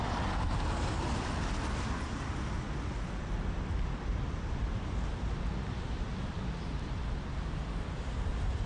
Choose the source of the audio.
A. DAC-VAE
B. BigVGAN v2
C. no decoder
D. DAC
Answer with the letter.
B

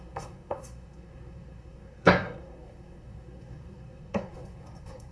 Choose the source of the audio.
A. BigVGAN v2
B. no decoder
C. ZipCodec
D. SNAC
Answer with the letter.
D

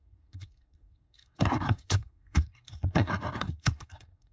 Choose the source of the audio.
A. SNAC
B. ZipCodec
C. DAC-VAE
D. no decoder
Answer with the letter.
A